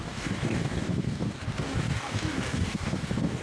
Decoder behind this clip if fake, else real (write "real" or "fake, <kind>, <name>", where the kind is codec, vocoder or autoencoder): fake, codec, DAC